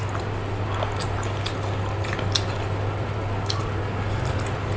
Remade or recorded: recorded